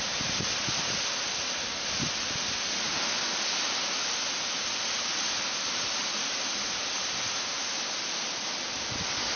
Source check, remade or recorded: recorded